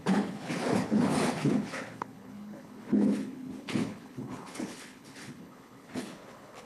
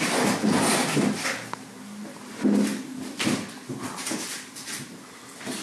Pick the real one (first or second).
second